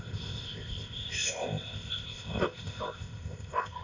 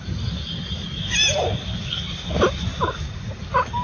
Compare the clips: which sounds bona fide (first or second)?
second